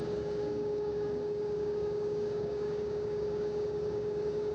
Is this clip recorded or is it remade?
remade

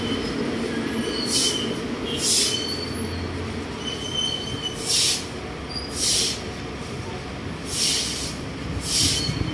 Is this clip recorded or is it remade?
recorded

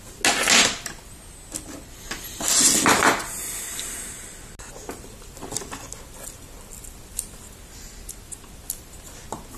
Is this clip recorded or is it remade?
recorded